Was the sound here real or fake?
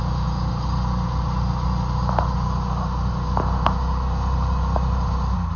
real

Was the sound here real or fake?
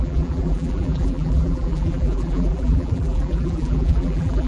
fake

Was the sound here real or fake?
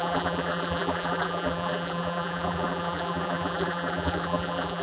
fake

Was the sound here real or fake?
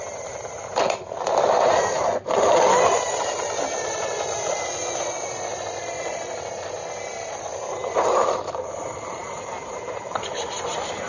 fake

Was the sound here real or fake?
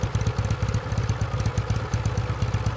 real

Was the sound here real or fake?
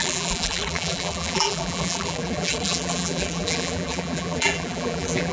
fake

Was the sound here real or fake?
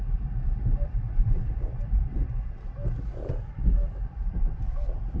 fake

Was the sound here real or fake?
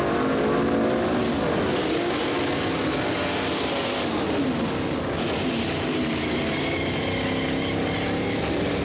real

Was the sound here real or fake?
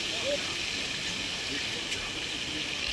real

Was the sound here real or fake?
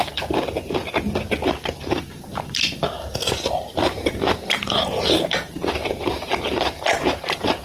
fake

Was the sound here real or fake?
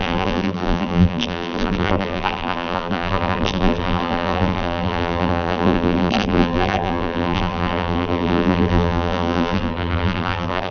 fake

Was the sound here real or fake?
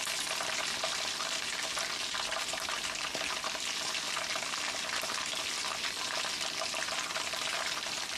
real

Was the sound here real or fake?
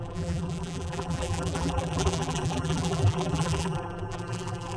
fake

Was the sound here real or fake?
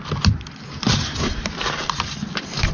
real